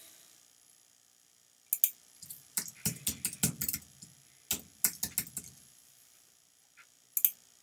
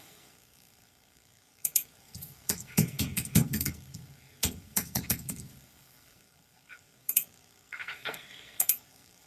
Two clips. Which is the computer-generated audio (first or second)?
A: second